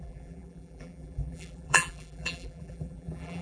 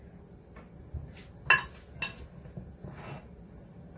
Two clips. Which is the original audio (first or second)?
second